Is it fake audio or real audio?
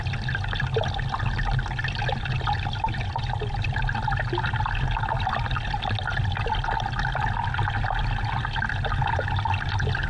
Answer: real